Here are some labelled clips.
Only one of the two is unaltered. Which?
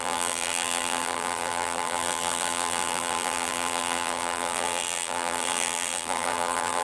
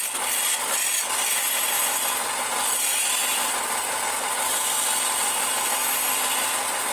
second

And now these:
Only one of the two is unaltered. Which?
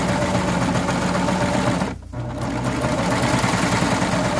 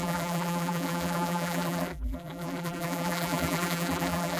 first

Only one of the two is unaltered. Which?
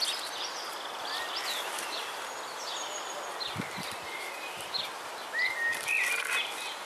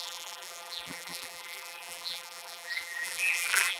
first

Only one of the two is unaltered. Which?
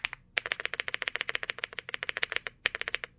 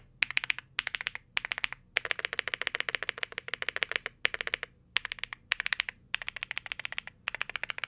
second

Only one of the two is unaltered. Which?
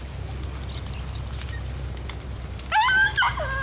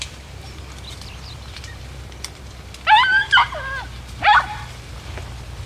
first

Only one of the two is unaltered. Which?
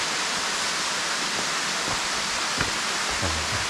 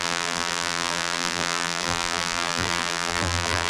first